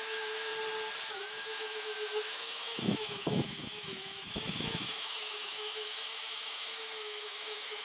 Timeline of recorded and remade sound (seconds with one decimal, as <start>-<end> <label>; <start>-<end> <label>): 0.0-0.5 remade; 0.5-1.2 recorded; 1.2-7.8 remade